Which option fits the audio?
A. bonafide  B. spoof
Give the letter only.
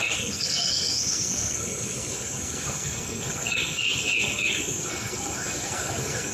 B